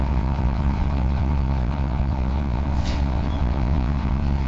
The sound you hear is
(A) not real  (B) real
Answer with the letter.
A